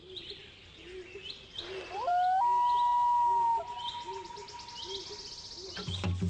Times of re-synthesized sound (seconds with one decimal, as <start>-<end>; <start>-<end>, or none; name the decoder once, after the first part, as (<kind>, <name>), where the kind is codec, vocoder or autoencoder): none